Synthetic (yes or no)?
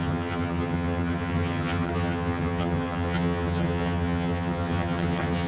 yes